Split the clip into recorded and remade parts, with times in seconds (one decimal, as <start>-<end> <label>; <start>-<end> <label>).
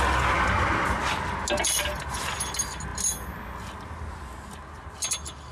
0.0-5.5 recorded